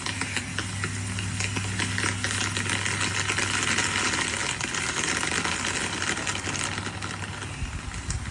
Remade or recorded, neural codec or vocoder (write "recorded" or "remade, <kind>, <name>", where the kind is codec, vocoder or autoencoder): recorded